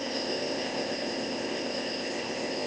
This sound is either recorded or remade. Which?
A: remade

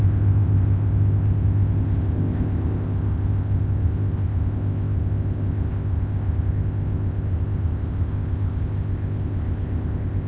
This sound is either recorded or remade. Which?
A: remade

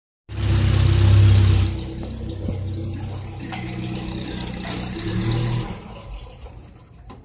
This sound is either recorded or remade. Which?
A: recorded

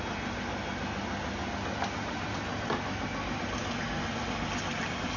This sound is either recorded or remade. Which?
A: recorded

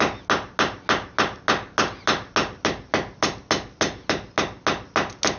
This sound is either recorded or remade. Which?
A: recorded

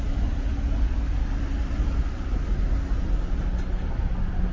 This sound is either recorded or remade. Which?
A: recorded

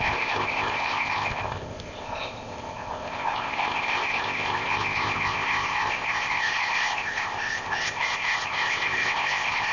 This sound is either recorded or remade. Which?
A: remade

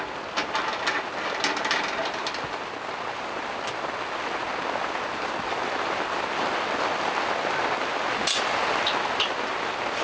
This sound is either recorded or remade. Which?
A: recorded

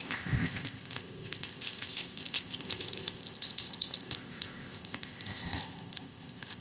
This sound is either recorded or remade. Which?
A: remade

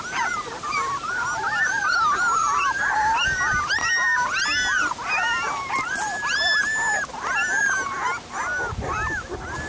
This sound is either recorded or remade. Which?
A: recorded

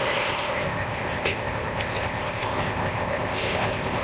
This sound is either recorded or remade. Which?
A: remade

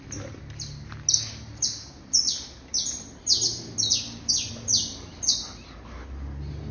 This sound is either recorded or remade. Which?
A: recorded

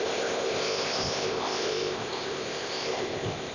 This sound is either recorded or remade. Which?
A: remade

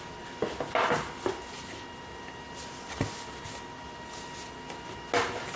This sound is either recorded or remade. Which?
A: recorded